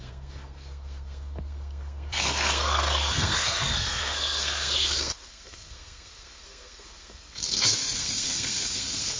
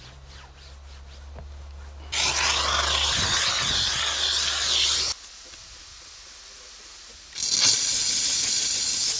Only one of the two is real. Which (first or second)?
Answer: second